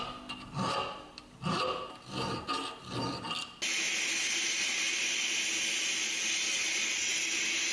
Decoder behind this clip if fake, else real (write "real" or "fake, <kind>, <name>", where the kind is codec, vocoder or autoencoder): real